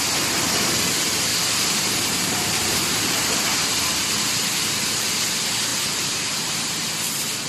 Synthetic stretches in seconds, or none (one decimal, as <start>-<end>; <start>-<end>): 1.3-4.5; 5.7-6.9